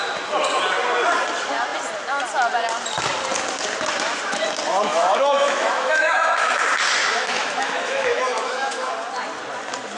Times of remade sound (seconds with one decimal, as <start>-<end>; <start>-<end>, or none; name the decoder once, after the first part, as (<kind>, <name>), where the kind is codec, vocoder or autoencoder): 4.9-6.6 (autoencoder, DAC-VAE); 7.0-8.9